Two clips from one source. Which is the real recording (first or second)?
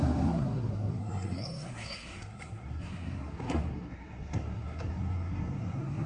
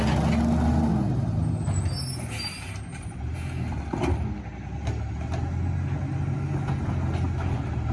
second